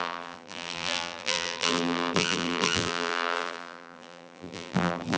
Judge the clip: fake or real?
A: fake